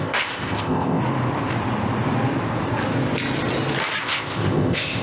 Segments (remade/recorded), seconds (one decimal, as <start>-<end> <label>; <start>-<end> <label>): 0.0-1.0 remade; 1.0-4.0 recorded; 4.0-5.0 remade